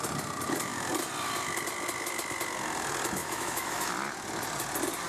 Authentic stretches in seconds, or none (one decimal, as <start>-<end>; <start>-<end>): 0.0-3.2; 3.9-5.1